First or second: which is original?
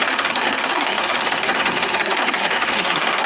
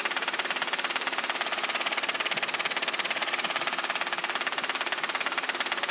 second